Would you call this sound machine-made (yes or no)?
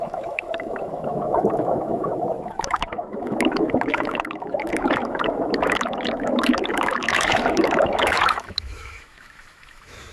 yes